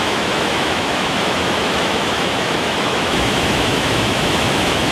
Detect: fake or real fake